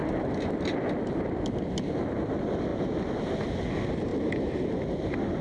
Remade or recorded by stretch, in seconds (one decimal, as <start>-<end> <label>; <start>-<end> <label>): 0.0-5.4 recorded

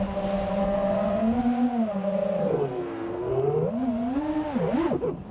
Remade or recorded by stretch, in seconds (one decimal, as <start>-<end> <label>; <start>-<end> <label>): 0.0-0.6 recorded; 0.6-1.4 remade; 1.4-2.4 recorded; 2.4-3.3 remade; 3.3-5.3 recorded

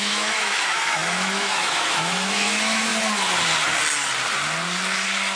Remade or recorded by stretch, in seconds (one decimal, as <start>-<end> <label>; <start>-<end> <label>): 0.0-2.9 remade; 2.9-5.4 recorded

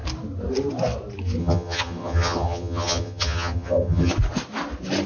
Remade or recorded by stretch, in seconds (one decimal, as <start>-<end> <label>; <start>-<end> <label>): 0.0-1.4 recorded; 1.4-4.1 remade; 4.1-5.1 recorded

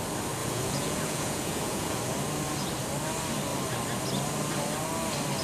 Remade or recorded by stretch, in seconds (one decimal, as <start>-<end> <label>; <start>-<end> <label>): 0.0-0.4 recorded; 0.4-2.0 remade; 2.0-5.4 recorded

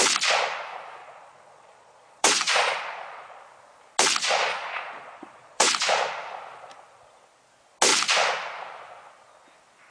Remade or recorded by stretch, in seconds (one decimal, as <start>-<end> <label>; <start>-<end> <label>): 0.0-1.0 recorded; 1.0-3.4 remade; 3.4-4.5 recorded; 4.5-5.7 remade; 5.7-9.9 recorded

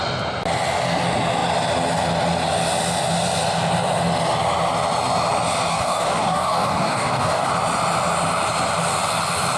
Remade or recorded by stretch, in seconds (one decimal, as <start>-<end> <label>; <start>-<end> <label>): 0.0-5.7 recorded; 5.7-7.5 remade; 7.5-9.6 recorded

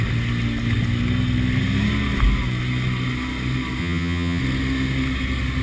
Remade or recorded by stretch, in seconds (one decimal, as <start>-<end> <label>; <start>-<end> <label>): 0.0-3.8 recorded; 3.8-4.4 remade; 4.4-5.6 recorded